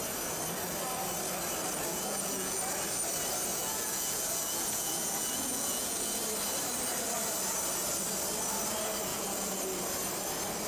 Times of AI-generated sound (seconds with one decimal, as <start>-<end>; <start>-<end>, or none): 1.9-2.6; 3.5-6.2; 9.1-9.6